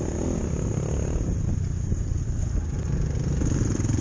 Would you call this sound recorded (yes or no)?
yes